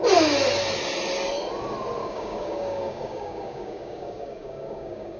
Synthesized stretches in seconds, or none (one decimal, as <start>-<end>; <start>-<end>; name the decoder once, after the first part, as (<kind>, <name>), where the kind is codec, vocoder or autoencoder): 2.0-5.2 (codec, DAC)